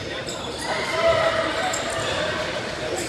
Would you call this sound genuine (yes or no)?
yes